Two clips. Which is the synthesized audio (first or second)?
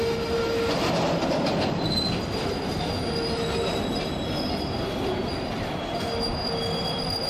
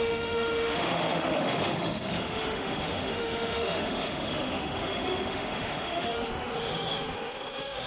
second